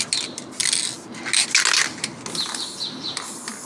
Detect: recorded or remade recorded